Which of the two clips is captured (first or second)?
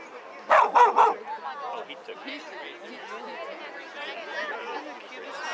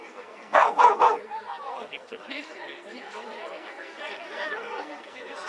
first